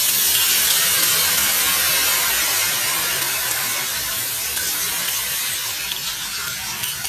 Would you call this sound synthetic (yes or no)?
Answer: no